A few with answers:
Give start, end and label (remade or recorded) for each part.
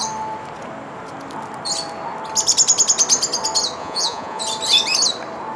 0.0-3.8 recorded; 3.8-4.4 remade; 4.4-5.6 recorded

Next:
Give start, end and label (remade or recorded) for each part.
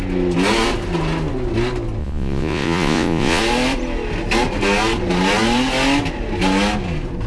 0.0-2.0 recorded; 2.0-3.4 remade; 3.4-7.3 recorded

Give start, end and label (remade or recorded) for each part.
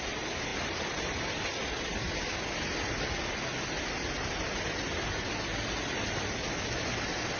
0.0-7.4 recorded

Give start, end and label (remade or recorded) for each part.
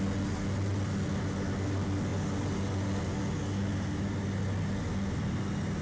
0.0-5.8 recorded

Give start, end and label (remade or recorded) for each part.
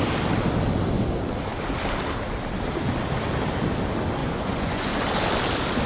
0.0-4.2 recorded; 4.2-5.0 remade; 5.0-5.9 recorded